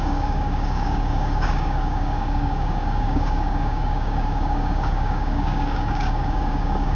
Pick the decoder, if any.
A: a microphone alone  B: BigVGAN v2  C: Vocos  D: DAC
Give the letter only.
D